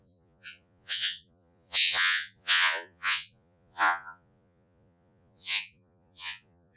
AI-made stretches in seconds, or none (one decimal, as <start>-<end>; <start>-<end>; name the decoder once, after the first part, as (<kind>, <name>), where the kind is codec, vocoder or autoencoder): 0.0-6.8 (vocoder, Vocos)